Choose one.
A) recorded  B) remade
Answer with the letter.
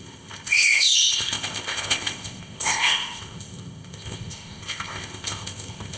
B